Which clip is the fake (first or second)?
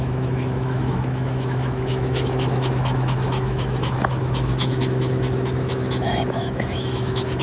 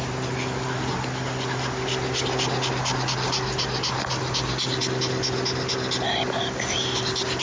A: first